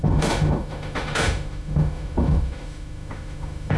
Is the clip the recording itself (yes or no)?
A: no